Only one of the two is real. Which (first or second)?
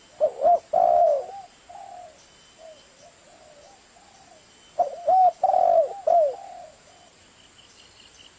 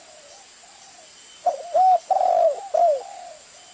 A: first